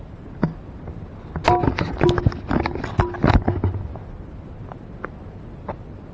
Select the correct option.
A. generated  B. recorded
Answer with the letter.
B